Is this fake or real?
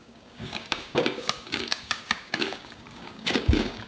fake